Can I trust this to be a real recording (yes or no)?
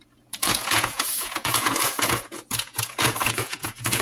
no